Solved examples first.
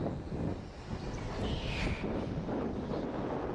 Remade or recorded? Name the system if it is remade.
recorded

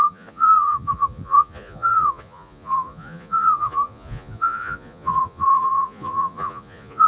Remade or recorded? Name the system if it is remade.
remade, vocoder, Vocos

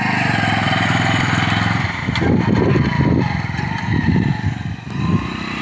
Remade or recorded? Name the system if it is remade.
recorded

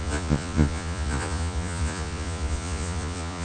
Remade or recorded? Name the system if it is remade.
remade, vocoder, Vocos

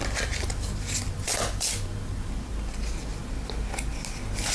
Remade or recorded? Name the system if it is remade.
recorded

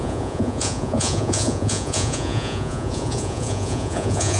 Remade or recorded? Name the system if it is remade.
remade, vocoder, Vocos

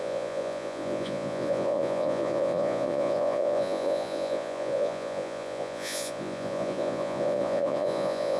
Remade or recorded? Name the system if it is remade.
remade, vocoder, Vocos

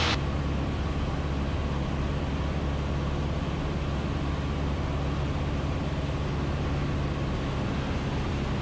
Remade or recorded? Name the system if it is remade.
recorded